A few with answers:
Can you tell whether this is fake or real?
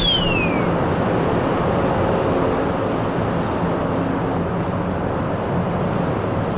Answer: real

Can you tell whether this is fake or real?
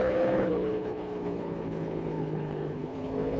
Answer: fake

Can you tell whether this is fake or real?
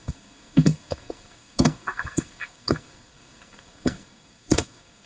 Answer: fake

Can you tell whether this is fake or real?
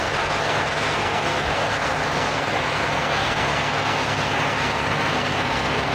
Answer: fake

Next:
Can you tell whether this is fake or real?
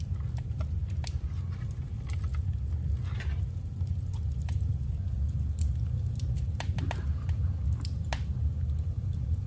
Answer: real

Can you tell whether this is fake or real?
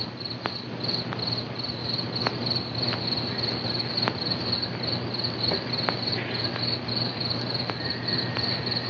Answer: real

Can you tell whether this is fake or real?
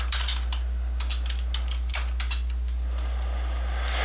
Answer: real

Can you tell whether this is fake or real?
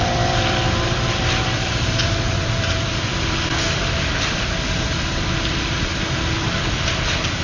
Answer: fake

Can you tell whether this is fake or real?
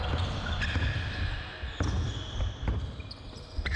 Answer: real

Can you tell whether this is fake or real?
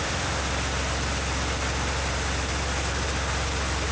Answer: real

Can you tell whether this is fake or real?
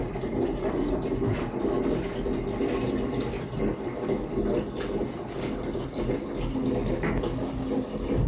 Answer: real